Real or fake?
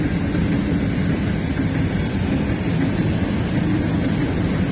real